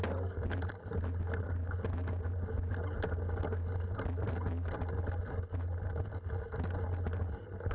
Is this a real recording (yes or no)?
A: yes